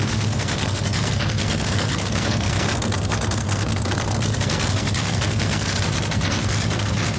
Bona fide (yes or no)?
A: no